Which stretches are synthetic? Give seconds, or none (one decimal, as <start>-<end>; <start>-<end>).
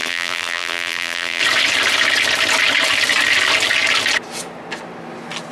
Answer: 0.0-1.4